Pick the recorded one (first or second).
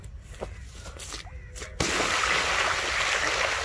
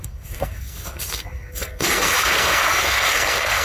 first